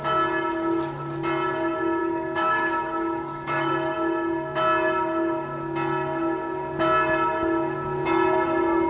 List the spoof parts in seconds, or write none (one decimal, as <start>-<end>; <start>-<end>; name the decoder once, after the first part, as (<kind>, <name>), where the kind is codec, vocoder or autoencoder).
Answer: 2.0-3.7 (autoencoder, DAC-VAE)